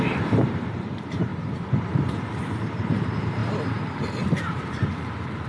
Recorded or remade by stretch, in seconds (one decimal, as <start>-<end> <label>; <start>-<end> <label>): 0.0-1.3 remade; 1.3-2.2 recorded; 2.2-5.5 remade